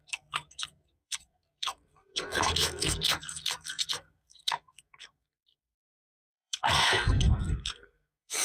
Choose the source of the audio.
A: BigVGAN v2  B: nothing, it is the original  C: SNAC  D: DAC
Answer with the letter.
C